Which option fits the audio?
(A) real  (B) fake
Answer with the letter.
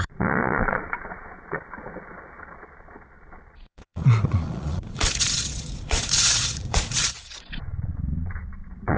B